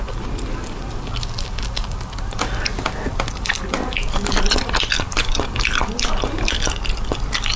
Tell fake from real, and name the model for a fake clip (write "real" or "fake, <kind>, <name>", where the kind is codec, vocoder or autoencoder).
real